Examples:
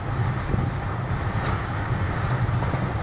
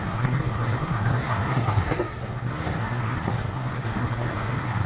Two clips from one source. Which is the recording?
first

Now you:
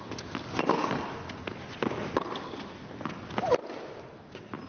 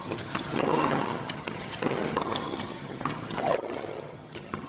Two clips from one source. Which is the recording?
first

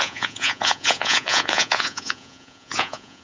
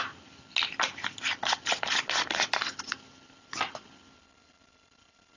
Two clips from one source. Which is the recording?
second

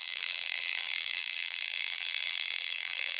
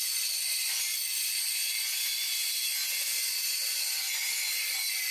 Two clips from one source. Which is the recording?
second